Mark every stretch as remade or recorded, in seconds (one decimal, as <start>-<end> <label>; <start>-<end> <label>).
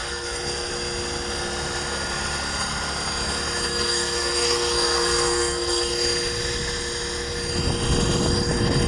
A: 0.0-0.7 remade; 0.7-3.7 recorded; 3.7-5.9 remade; 5.9-8.9 recorded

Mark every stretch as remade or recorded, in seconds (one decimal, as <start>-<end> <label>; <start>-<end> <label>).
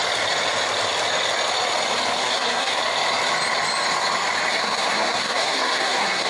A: 0.0-2.2 recorded; 2.2-2.8 remade; 2.8-4.5 recorded; 4.5-6.3 remade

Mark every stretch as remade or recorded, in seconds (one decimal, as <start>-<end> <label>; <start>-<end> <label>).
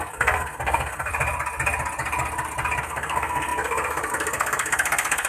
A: 0.0-1.1 remade; 1.1-2.8 recorded; 2.8-5.3 remade